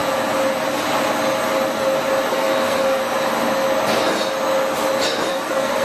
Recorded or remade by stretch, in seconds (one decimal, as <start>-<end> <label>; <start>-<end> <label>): 0.0-2.3 recorded; 2.3-3.0 remade; 3.0-5.3 recorded; 5.3-5.8 remade